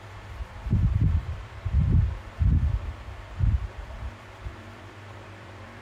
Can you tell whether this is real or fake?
fake